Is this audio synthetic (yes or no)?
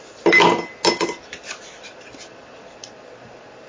no